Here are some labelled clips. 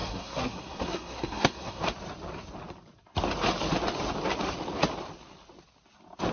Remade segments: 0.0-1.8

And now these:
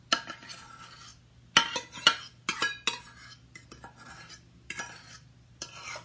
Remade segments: none

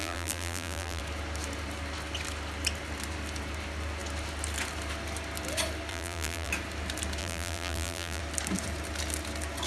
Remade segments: 0.0-1.0; 5.9-6.5; 7.2-8.2

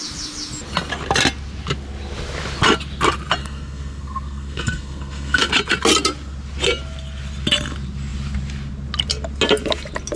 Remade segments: 3.4-5.5

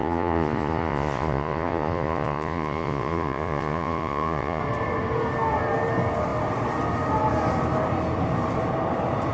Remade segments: 0.0-4.6

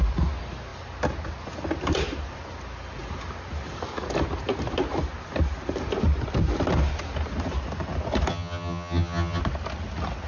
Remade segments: 8.3-9.4

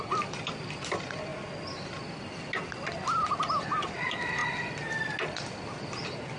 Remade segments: 0.0-1.3; 2.9-4.4; 5.9-6.4